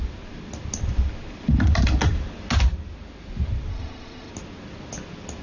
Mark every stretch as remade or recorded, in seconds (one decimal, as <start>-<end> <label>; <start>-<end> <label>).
0.0-3.7 recorded; 3.7-4.3 remade; 4.3-5.4 recorded